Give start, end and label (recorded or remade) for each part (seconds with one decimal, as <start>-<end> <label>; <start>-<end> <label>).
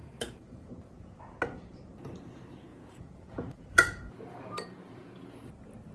0.0-0.7 remade; 0.7-2.7 recorded; 2.7-5.5 remade; 5.5-5.9 recorded